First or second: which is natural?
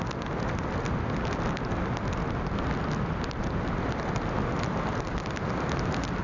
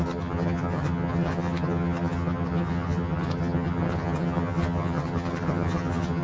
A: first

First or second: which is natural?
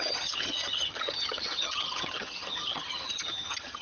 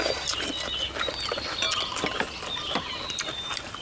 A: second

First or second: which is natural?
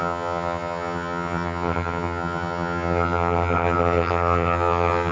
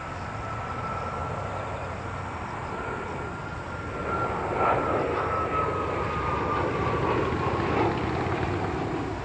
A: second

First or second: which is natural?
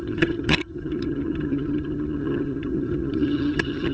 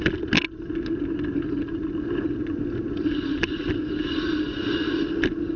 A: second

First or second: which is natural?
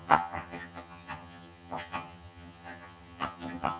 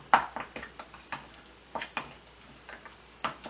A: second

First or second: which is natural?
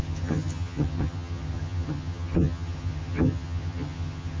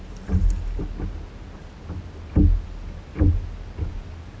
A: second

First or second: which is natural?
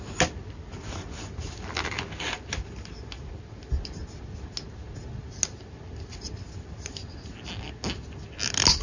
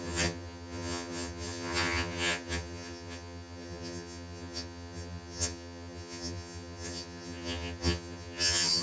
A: first